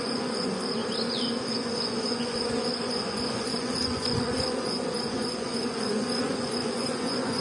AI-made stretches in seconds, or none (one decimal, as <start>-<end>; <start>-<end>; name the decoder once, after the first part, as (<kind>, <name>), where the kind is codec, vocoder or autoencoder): 0.0-0.8 (vocoder, Vocos); 1.5-7.4